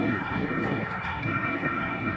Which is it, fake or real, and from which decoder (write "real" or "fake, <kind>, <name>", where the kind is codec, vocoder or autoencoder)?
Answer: fake, codec, SNAC